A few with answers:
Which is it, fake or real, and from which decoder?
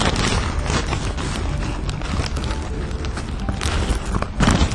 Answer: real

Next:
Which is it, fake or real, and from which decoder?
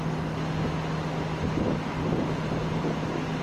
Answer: real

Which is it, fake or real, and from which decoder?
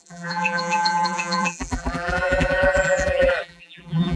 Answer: fake, vocoder, BigVGAN v2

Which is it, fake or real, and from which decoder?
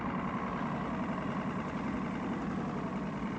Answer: real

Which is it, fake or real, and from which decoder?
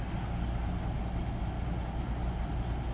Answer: real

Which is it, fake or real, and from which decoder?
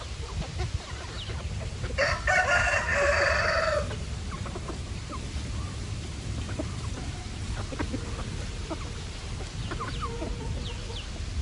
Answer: fake, vocoder, BigVGAN v2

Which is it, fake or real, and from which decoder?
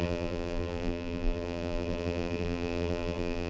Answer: fake, vocoder, BigVGAN v2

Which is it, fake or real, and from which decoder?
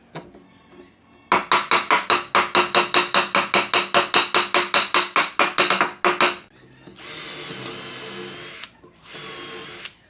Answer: real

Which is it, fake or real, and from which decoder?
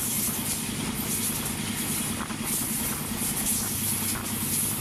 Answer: real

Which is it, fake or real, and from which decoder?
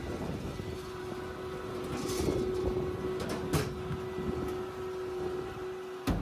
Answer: real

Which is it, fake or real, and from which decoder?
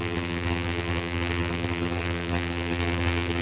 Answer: fake, vocoder, BigVGAN v2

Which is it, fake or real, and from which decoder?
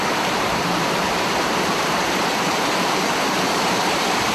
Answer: fake, vocoder, BigVGAN v2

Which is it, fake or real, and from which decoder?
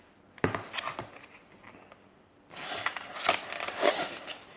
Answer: real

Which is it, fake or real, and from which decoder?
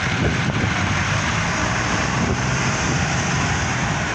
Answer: fake, vocoder, BigVGAN v2